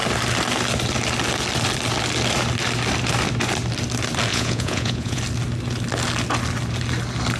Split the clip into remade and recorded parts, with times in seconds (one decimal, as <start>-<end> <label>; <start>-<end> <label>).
0.0-4.3 recorded; 4.3-5.2 remade; 5.2-7.4 recorded